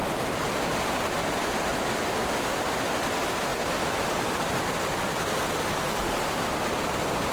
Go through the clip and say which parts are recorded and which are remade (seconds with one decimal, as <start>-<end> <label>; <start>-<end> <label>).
0.0-7.3 recorded